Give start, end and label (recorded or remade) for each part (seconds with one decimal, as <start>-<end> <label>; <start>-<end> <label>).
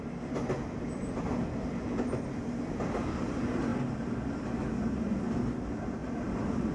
0.0-6.0 recorded; 6.0-6.7 remade